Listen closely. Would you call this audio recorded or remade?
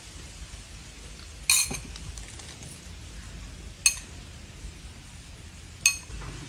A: recorded